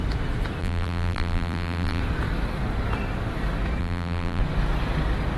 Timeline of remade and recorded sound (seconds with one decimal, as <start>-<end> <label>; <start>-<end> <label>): 0.0-0.6 recorded; 0.6-2.0 remade; 2.0-3.8 recorded; 3.8-4.4 remade; 4.4-5.4 recorded